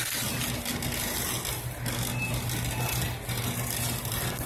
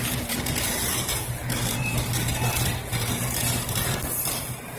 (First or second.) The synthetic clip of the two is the second